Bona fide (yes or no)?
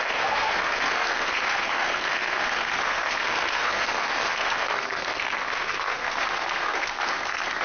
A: no